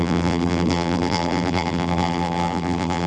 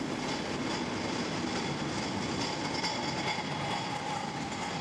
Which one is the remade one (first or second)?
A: first